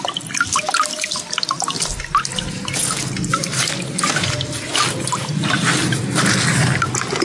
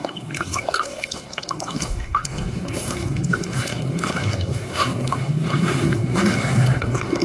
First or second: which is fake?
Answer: second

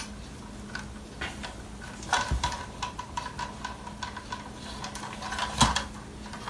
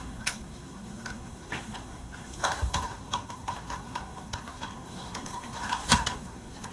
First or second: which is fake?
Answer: second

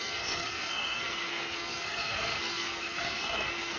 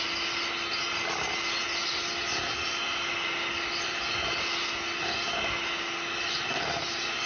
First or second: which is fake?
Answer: first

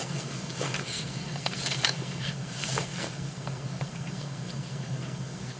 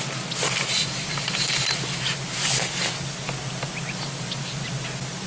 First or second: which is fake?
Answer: first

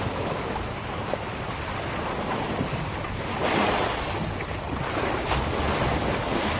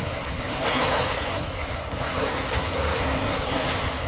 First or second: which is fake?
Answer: second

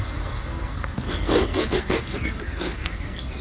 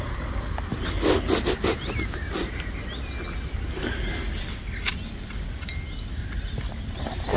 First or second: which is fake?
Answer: first